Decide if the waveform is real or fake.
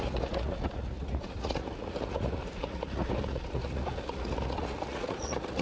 fake